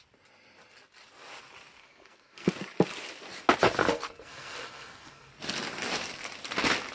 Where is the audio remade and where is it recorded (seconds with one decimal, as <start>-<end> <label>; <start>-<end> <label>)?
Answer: 0.0-1.8 recorded; 1.8-2.5 remade; 2.5-3.8 recorded; 3.8-5.3 remade; 5.3-6.9 recorded